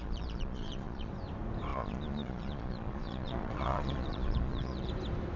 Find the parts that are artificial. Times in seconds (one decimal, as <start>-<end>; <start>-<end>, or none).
0.0-1.1; 1.7-4.9